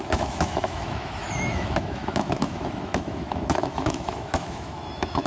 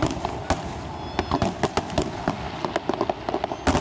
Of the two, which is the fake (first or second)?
first